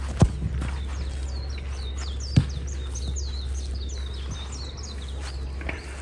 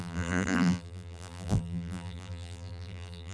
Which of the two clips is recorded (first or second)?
first